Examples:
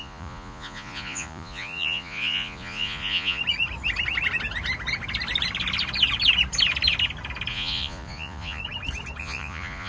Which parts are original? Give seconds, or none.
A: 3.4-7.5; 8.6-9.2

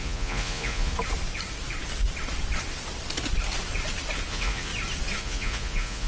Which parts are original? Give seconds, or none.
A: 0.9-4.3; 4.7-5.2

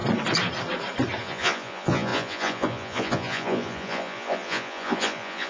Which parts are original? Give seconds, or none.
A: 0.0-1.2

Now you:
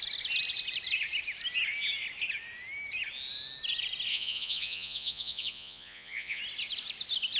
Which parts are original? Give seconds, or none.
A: 0.0-4.1; 6.4-7.4

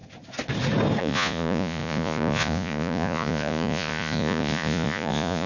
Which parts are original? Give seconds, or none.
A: 0.0-1.0

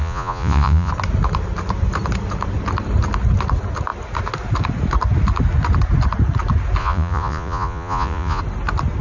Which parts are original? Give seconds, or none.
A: 0.9-6.8; 8.4-9.0

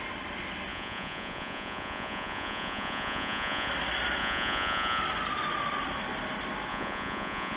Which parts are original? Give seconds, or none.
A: 0.0-0.7; 3.7-4.2; 5.0-6.7